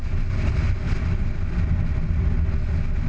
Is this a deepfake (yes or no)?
no